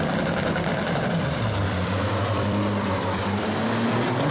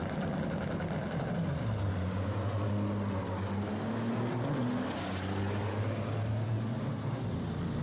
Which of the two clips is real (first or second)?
second